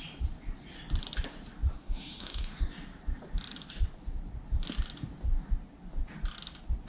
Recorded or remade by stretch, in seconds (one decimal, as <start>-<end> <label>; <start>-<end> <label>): 0.0-1.8 recorded; 1.8-2.6 remade; 2.6-6.9 recorded